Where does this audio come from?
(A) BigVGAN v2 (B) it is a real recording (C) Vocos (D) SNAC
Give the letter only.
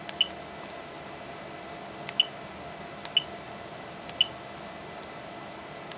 B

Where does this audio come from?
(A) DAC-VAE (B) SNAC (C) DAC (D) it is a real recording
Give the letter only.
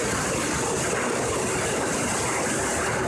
D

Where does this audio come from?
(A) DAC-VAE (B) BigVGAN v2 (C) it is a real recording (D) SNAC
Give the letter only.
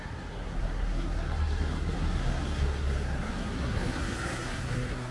D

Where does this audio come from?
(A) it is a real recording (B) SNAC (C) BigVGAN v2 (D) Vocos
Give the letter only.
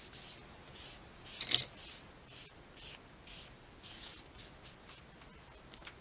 A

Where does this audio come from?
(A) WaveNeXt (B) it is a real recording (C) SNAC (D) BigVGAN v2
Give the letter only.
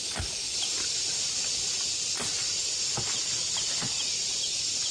B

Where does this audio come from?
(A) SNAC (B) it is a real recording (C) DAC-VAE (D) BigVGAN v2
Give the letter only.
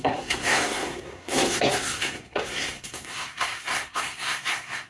A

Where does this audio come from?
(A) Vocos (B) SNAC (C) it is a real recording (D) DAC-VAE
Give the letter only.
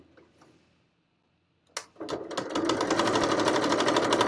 C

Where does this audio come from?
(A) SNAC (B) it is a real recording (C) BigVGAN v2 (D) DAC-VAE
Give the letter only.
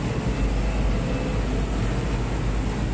B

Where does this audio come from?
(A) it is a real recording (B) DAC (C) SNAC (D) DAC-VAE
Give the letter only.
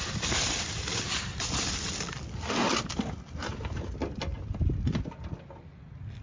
A